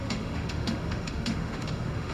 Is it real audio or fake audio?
fake